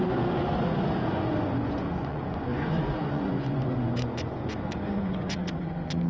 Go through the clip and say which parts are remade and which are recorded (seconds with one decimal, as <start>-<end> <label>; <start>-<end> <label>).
0.0-6.1 remade

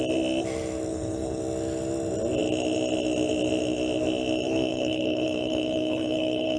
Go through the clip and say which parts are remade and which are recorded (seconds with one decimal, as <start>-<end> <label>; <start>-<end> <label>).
0.0-0.9 recorded; 0.9-1.4 remade; 1.4-4.7 recorded; 4.7-6.6 remade

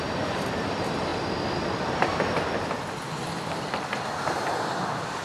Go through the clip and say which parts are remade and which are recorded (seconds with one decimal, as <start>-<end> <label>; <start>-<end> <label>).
0.0-1.1 remade; 1.1-4.1 recorded; 4.1-5.2 remade